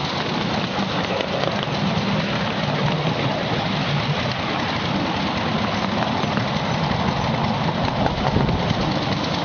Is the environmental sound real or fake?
real